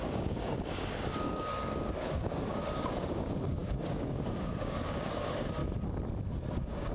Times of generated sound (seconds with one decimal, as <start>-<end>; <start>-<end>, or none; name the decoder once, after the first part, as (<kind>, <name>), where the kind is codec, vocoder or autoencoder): 0.0-5.6 (codec, DAC); 6.5-6.9